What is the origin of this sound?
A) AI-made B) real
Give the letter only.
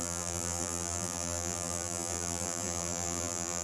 A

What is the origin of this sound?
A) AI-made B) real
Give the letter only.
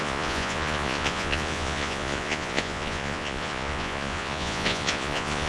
A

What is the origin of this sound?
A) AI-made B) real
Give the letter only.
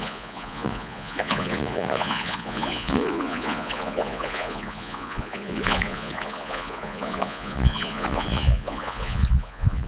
A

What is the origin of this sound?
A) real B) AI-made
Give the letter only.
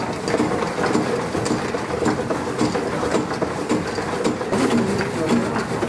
A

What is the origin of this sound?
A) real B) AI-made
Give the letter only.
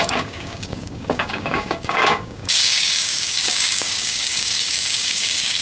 B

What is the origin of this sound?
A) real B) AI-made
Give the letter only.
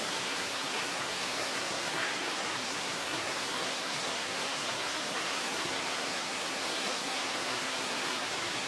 B